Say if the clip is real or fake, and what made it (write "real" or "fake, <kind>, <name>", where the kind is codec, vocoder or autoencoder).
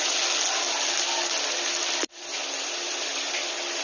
real